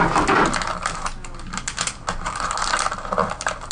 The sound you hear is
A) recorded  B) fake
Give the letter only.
A